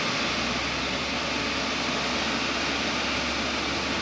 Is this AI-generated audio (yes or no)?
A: no